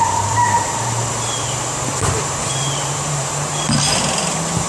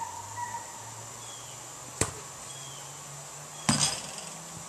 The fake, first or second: first